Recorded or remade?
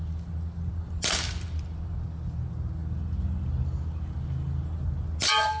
recorded